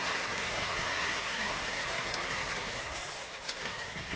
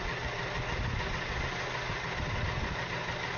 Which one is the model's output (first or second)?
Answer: first